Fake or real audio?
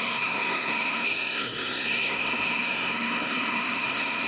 fake